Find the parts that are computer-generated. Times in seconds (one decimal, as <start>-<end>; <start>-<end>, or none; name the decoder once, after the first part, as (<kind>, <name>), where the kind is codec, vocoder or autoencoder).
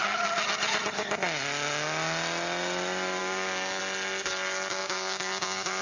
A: 3.2-3.8 (codec, DAC); 4.8-5.8